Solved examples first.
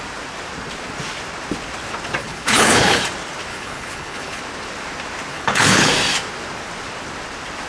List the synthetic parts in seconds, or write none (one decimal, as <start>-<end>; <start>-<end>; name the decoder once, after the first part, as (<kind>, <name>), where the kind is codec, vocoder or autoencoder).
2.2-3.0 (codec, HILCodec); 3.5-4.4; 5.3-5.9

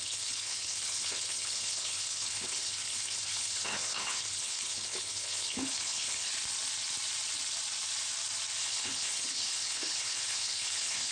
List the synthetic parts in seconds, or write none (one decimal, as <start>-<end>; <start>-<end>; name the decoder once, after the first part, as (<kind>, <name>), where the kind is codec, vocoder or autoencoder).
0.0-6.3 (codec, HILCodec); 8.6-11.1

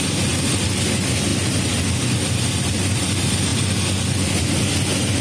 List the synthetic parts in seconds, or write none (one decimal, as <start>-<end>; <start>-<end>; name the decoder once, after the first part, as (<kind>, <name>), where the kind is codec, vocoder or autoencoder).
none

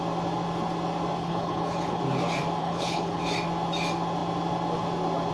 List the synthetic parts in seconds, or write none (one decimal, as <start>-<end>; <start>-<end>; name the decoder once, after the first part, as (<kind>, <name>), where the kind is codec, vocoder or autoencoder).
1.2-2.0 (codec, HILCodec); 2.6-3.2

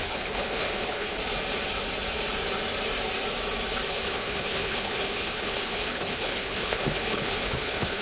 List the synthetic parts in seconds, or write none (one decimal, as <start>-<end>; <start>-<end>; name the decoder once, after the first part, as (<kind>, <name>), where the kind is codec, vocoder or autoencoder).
0.0-1.2 (codec, HILCodec); 3.9-8.0

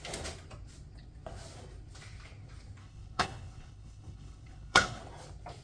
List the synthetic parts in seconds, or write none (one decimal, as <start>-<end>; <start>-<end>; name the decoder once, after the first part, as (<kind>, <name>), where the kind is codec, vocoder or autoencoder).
2.8-5.0 (codec, HILCodec)